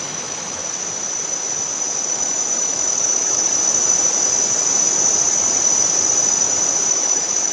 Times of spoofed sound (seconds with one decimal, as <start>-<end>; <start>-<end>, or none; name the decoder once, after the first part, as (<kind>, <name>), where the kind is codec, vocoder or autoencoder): 0.0-0.6 (autoencoder, DAC-VAE); 2.1-3.5; 6.9-7.5